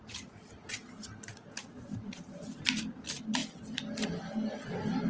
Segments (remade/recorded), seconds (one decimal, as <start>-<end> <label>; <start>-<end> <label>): 0.0-0.7 remade; 0.7-1.3 recorded; 1.3-2.4 remade; 2.4-5.1 recorded